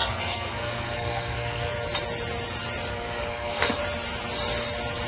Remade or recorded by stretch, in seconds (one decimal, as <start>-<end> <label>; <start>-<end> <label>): 0.0-1.7 remade; 1.7-2.9 recorded; 2.9-3.8 remade; 3.8-5.1 recorded